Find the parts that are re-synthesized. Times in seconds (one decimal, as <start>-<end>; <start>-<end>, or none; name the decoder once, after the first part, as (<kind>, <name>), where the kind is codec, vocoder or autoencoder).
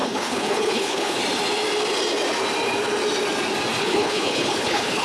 0.0-1.2 (codec, HILCodec); 3.8-5.0